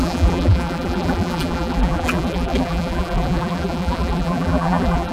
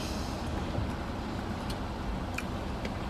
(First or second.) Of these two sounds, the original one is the second